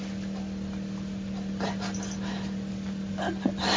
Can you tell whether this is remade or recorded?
recorded